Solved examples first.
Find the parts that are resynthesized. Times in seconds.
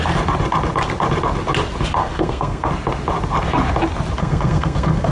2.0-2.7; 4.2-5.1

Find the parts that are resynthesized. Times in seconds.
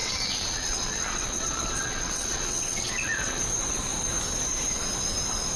0.0-3.4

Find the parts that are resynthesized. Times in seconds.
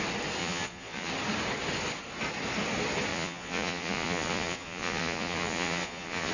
0.4-1.1; 3.1-6.3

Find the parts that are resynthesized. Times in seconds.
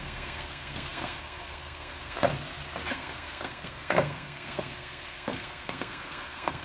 0.0-2.3; 2.9-6.6